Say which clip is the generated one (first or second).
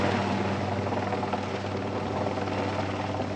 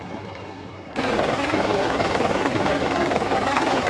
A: second